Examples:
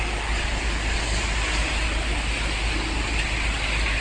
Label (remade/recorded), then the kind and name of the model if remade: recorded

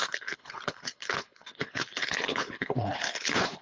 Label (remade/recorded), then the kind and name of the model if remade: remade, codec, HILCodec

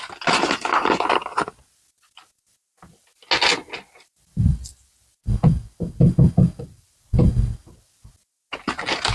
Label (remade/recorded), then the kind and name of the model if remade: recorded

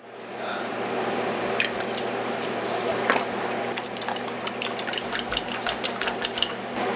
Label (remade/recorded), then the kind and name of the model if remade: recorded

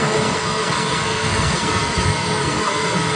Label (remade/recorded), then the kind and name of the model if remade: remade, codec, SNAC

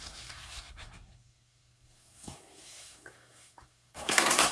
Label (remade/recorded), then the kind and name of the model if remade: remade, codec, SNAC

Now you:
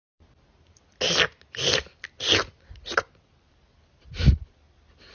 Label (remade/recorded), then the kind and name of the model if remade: recorded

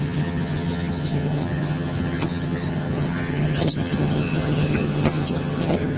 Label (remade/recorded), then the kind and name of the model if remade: remade, vocoder, HiFi-GAN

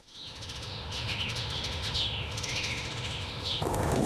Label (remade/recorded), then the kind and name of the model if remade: remade, autoencoder, DAC-VAE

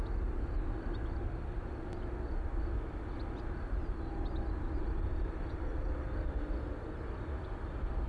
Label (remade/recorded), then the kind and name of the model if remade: recorded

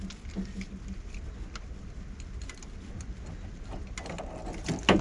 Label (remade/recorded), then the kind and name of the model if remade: recorded